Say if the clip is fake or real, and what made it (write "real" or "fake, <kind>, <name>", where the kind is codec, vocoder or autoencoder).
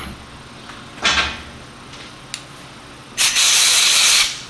real